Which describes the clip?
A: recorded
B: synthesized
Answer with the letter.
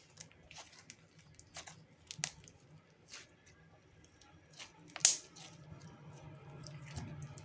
A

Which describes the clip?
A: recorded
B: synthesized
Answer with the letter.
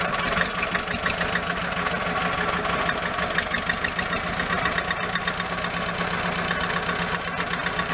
A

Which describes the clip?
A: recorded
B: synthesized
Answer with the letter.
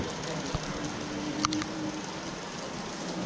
A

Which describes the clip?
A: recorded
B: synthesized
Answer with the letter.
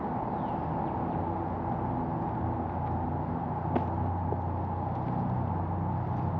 A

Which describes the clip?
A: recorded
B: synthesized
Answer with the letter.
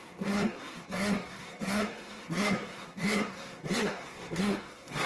B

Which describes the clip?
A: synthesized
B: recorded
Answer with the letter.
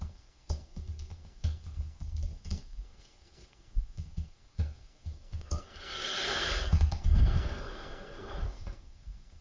A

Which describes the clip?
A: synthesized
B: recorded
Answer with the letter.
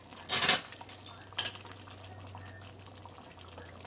B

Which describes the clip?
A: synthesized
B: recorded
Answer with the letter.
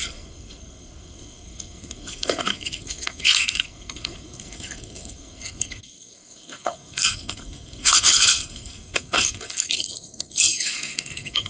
A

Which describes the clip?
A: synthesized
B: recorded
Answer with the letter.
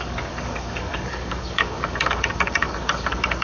A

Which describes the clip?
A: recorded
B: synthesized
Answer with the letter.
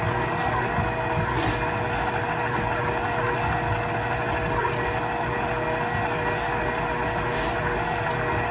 A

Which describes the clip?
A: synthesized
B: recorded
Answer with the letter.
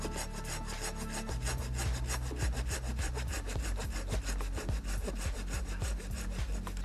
B